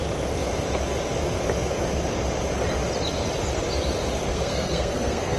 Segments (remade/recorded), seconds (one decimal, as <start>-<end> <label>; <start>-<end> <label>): 0.0-4.3 recorded; 4.3-5.4 remade